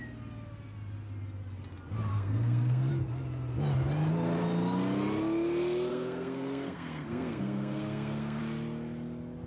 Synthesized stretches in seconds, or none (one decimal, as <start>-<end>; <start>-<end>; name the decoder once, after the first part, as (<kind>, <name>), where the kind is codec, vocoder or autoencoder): 2.1-2.9 (codec, SNAC); 5.9-8.4